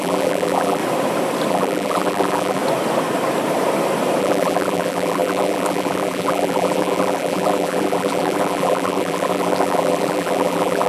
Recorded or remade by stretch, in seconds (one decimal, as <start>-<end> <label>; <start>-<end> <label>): 0.0-0.8 remade; 0.8-1.5 recorded; 1.5-2.6 remade; 2.6-4.2 recorded; 4.2-10.9 remade